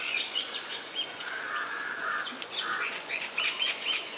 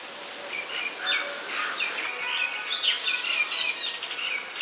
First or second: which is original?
second